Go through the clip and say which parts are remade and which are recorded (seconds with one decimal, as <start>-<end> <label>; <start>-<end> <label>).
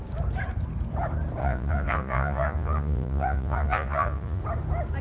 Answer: 0.0-1.4 recorded; 1.4-4.4 remade; 4.4-5.0 recorded